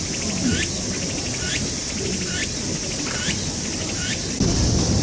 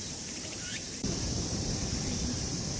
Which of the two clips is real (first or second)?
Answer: first